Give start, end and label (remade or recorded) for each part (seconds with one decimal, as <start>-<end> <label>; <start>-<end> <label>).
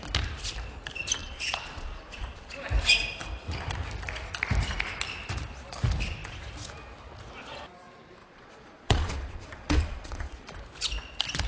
0.0-1.2 recorded; 1.2-2.5 remade; 2.5-8.2 recorded; 8.2-10.6 remade; 10.6-11.5 recorded